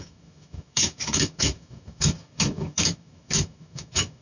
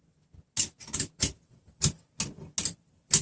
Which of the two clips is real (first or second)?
second